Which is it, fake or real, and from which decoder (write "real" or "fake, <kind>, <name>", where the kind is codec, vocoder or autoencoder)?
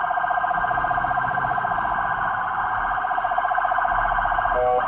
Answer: real